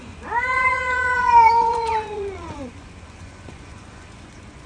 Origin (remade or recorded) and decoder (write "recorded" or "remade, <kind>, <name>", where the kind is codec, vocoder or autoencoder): remade, vocoder, Vocos